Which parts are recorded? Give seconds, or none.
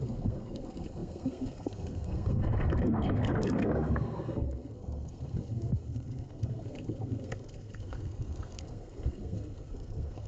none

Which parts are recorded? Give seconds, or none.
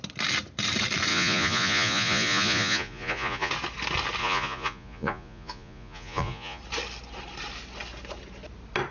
0.0-1.1; 3.5-4.2; 6.6-8.9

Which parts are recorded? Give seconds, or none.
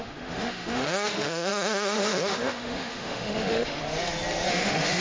3.8-4.5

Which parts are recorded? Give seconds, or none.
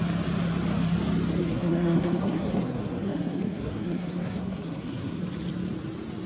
0.0-1.4; 5.2-6.3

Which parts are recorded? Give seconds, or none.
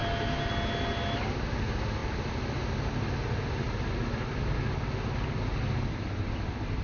0.0-6.8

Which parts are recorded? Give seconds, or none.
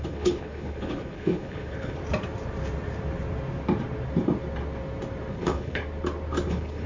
2.0-5.3; 5.8-6.5